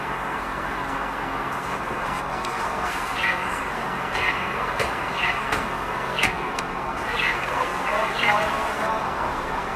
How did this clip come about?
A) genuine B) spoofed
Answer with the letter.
B